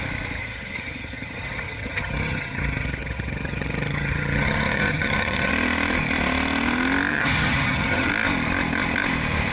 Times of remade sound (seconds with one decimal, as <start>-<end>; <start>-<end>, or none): 0.4-5.5; 7.1-8.1